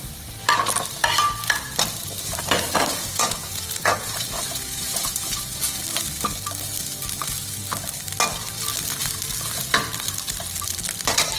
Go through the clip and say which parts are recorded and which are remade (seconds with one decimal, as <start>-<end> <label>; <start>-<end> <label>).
0.0-2.9 recorded; 2.9-5.8 remade; 5.8-11.4 recorded